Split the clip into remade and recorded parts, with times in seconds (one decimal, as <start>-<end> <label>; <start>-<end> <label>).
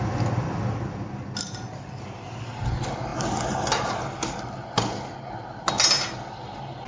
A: 0.0-6.9 recorded